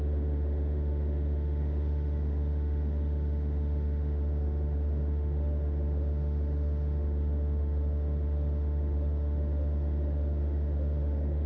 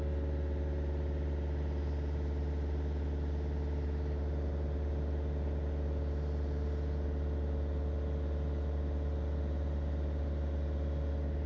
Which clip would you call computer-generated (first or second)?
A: first